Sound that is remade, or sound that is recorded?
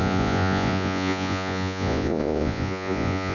remade